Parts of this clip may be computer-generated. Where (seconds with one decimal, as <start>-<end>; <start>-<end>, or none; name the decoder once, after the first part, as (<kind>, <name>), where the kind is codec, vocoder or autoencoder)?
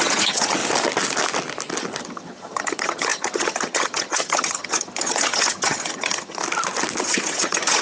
0.0-0.6 (vocoder, HiFi-GAN); 2.0-6.4; 7.0-7.8